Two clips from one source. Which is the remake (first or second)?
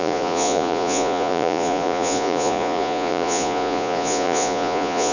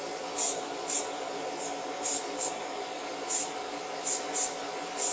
first